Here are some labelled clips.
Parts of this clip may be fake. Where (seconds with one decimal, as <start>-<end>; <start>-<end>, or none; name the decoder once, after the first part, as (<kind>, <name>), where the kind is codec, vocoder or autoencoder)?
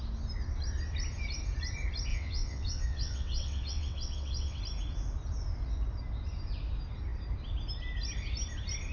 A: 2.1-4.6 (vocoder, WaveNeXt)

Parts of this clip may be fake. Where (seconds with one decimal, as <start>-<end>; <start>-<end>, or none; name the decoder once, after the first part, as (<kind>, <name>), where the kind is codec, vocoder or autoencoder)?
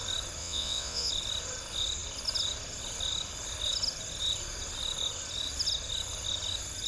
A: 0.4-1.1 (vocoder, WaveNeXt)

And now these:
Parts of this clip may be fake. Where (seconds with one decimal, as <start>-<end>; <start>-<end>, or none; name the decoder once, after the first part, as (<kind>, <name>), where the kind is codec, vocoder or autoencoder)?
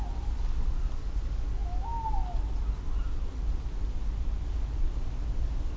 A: none